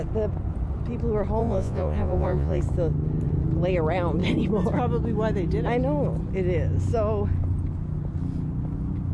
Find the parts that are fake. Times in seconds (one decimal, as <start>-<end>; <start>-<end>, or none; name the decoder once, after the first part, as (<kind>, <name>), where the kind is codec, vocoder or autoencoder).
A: 1.4-2.6 (vocoder, Vocos)